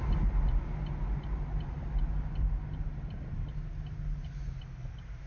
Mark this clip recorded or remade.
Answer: recorded